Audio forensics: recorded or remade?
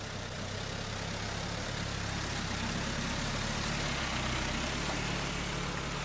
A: recorded